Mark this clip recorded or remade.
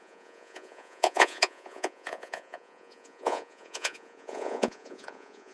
remade